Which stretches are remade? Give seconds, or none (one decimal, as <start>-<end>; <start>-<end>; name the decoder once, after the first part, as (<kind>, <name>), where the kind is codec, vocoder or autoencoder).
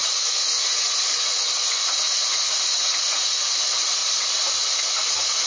0.0-3.3 (vocoder, Vocos)